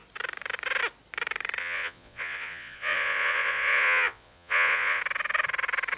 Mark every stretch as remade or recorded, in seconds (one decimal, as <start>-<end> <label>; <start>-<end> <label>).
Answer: 0.0-1.6 recorded; 1.6-5.0 remade; 5.0-6.0 recorded